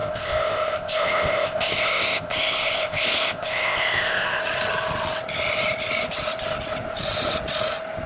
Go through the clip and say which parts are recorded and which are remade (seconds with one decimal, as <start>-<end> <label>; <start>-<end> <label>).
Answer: 0.0-4.4 remade; 4.4-8.1 recorded